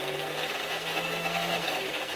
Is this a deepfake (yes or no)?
yes